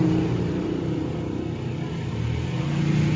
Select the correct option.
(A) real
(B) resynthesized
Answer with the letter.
A